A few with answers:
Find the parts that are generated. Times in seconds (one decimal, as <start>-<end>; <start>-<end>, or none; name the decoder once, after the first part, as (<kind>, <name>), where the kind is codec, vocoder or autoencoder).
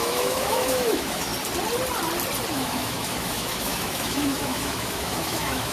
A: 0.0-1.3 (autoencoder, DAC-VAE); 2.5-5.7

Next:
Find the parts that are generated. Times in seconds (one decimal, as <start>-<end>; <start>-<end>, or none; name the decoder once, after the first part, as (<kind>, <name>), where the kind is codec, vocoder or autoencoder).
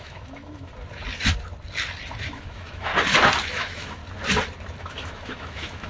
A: 0.0-0.7 (autoencoder, DAC-VAE); 2.3-2.9; 3.5-4.0; 4.8-5.9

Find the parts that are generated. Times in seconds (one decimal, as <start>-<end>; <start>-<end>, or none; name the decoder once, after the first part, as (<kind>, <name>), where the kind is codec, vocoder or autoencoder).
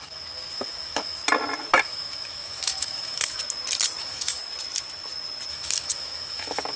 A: 0.0-1.2 (autoencoder, DAC-VAE); 1.8-3.4; 4.0-4.4; 5.5-6.8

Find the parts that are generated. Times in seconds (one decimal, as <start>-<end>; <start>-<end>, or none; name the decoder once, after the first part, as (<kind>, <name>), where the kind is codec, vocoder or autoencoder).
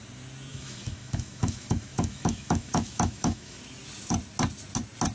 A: 0.5-3.6 (autoencoder, DAC-VAE)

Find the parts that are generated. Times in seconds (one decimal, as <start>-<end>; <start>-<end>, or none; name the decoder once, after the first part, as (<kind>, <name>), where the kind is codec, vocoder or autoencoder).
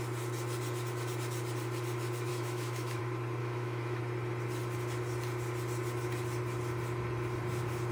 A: 2.3-3.0 (autoencoder, DAC-VAE); 3.4-4.0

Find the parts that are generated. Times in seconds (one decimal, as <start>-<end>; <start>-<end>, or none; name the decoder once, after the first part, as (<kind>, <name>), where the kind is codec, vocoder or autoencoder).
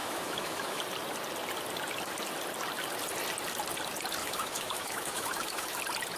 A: 0.0-0.8 (autoencoder, DAC-VAE); 4.2-5.8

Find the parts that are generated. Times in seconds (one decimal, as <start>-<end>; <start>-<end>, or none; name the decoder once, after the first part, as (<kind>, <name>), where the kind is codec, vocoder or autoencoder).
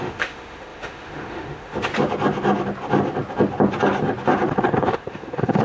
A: 0.0-1.9 (autoencoder, DAC-VAE); 4.7-5.6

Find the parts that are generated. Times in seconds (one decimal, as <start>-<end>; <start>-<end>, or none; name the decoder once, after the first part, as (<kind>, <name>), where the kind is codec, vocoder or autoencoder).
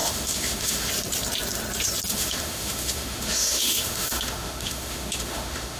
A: 0.0-0.9 (autoencoder, DAC-VAE); 2.1-5.8